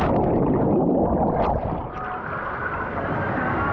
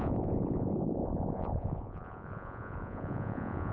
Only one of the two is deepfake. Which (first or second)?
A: second